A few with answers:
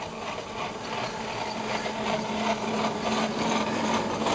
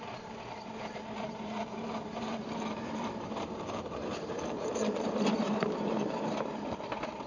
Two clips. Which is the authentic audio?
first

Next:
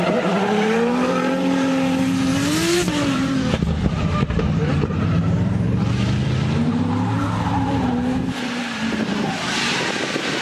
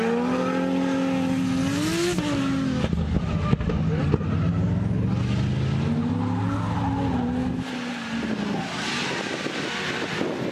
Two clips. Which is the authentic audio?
second